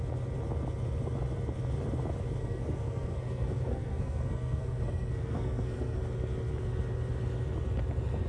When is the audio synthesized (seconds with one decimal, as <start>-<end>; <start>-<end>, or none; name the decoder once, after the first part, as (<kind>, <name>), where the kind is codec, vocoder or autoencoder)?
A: 2.4-6.0 (codec, SNAC)